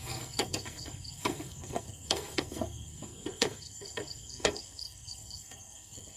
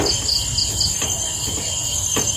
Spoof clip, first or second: first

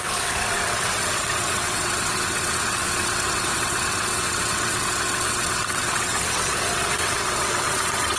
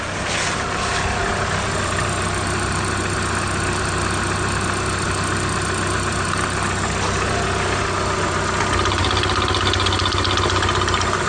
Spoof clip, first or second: first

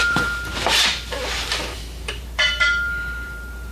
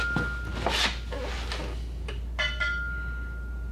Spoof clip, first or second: first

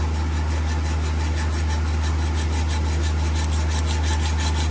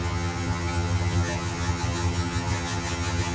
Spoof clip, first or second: second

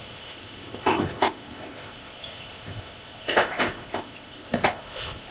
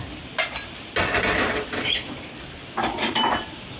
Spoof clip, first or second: first